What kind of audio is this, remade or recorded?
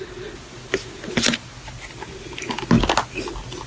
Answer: recorded